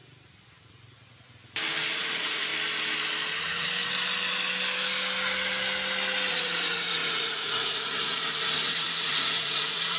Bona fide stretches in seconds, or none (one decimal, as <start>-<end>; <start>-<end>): 0.0-1.9; 2.5-3.4; 3.8-6.3